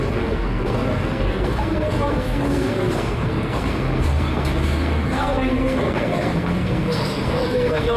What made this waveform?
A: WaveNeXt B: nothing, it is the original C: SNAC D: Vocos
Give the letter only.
C